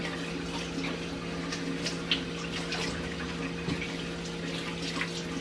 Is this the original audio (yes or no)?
yes